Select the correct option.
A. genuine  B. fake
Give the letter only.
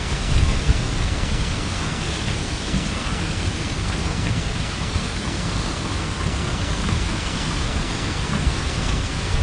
B